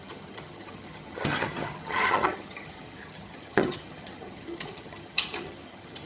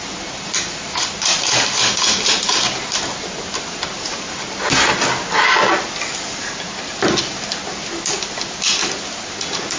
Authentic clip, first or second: second